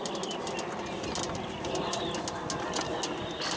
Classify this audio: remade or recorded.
recorded